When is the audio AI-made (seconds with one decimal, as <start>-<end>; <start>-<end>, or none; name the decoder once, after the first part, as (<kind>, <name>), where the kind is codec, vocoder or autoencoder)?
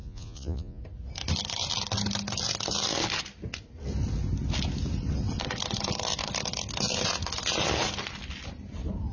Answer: 0.0-0.8 (vocoder, Vocos)